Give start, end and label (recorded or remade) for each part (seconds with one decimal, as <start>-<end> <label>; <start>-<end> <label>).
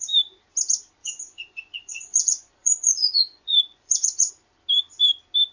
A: 0.0-1.0 recorded; 1.0-4.3 remade; 4.3-5.5 recorded